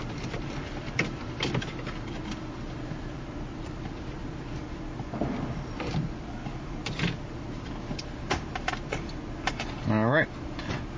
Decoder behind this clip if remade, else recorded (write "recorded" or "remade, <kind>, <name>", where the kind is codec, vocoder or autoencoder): remade, vocoder, BigVGAN v2